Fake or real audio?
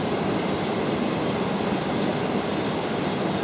real